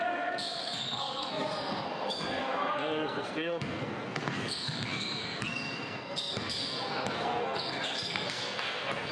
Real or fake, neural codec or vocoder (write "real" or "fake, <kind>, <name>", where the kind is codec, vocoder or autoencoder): fake, codec, SNAC